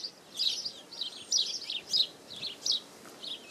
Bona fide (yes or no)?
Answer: yes